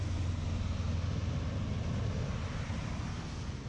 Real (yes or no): yes